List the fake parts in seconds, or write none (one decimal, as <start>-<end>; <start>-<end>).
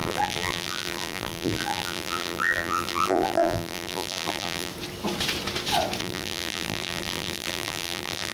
0.0-4.7; 6.0-8.3